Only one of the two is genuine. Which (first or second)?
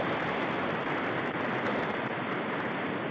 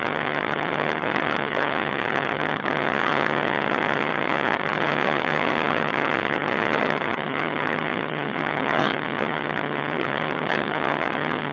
first